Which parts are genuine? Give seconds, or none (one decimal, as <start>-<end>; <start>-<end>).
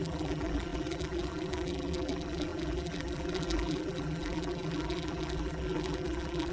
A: none